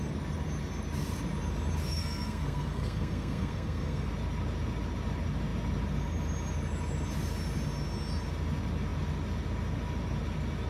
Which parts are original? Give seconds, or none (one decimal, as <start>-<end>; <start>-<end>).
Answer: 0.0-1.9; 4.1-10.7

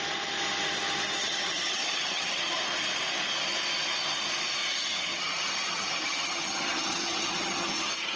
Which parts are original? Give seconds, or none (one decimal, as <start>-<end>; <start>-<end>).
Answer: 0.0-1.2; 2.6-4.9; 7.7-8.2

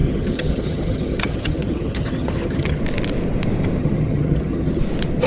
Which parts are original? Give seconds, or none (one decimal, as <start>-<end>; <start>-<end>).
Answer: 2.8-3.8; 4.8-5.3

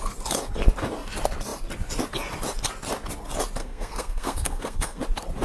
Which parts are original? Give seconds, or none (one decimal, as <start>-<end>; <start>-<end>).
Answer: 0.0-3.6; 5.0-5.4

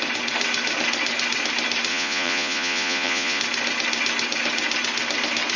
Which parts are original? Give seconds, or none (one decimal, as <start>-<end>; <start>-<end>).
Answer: 0.0-1.9; 3.4-5.6